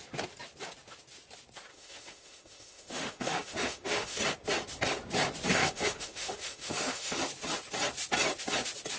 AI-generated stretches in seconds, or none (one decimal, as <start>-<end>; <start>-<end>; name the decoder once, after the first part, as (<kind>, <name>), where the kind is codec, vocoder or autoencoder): 1.7-4.2 (autoencoder, DAC-VAE); 5.5-7.2